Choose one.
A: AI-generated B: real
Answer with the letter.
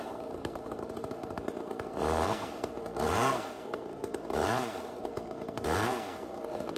A